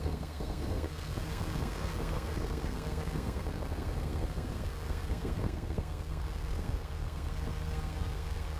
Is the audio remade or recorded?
remade